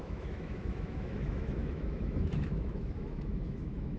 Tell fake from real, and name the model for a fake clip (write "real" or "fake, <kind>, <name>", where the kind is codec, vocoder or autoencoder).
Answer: fake, autoencoder, DAC-VAE